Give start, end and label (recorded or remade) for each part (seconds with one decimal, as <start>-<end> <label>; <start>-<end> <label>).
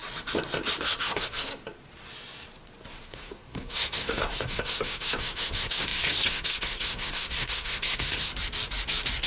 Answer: 0.0-0.8 recorded; 0.8-1.5 remade; 1.5-3.0 recorded; 3.0-8.3 remade; 8.3-9.3 recorded